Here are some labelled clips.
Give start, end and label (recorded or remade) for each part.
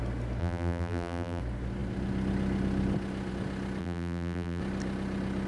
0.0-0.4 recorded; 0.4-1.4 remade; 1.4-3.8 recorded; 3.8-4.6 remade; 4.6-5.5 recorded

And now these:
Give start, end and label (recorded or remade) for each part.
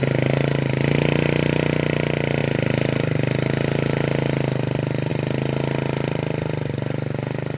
0.0-7.6 recorded